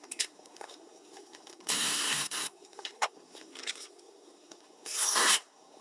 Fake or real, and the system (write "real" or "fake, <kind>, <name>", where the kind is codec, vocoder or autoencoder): fake, codec, SNAC